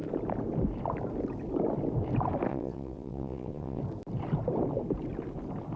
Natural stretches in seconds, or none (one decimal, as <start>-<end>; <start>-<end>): 0.0-2.5; 3.8-5.8